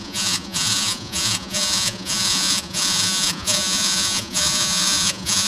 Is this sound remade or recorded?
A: remade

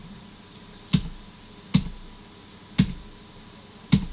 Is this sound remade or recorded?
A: recorded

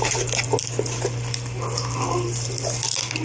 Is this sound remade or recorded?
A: recorded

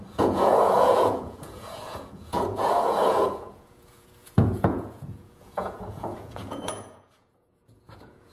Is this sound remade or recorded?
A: remade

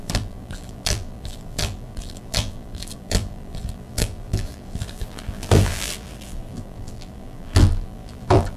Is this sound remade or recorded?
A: remade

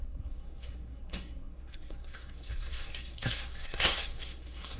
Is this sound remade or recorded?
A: remade